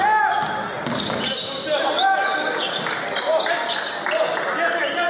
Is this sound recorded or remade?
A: recorded